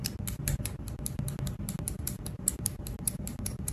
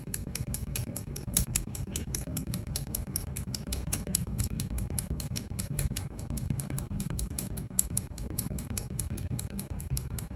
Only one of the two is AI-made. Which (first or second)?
second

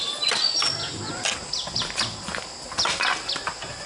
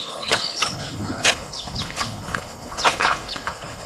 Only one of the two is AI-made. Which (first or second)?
second